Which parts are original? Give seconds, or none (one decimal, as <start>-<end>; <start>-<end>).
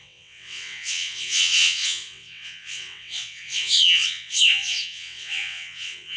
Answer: none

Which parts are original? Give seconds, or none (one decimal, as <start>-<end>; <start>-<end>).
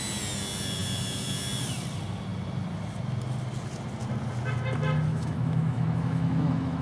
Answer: 0.0-5.1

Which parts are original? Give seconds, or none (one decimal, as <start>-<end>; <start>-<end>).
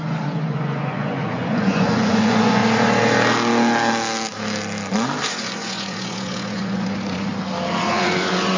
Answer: 2.6-5.3; 7.3-7.9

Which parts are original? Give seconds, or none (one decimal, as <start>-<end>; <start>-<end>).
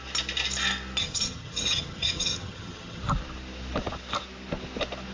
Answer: 0.0-1.0; 3.0-5.1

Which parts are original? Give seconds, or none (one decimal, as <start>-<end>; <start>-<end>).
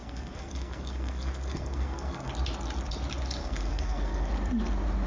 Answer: 2.3-3.4; 4.3-5.1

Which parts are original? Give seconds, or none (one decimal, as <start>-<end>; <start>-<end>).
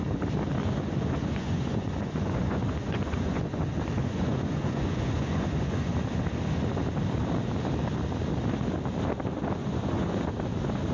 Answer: 0.0-0.6; 3.6-4.0; 5.9-9.6; 10.2-10.9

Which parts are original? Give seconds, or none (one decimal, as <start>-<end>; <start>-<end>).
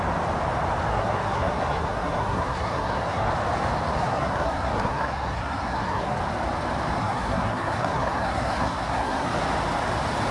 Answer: 0.0-0.9; 3.3-4.0; 6.2-7.0; 9.3-10.3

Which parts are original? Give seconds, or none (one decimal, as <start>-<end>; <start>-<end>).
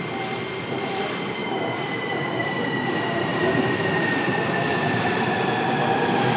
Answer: 0.0-1.4; 2.5-3.3; 5.5-6.4